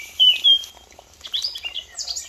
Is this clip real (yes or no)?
yes